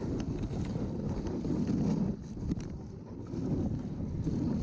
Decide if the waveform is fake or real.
real